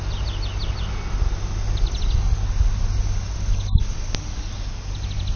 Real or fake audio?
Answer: real